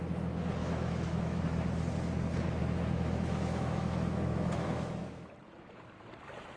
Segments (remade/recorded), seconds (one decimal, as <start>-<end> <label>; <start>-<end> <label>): 0.0-0.6 recorded; 0.6-1.4 remade; 1.4-2.6 recorded; 2.6-5.3 remade; 5.3-6.6 recorded

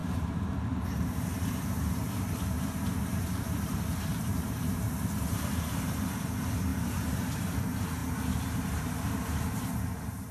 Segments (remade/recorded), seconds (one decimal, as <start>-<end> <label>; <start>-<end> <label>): 0.0-0.9 recorded; 0.9-10.3 remade